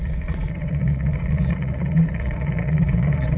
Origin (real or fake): fake